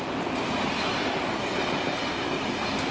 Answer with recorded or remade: recorded